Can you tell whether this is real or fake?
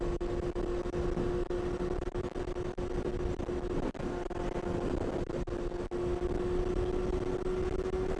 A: real